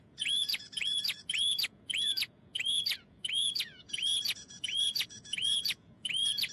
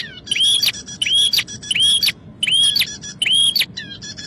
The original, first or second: second